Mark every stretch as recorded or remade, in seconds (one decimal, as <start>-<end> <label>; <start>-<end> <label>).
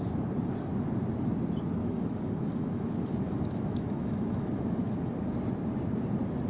0.0-1.8 recorded; 1.8-5.1 remade; 5.1-6.5 recorded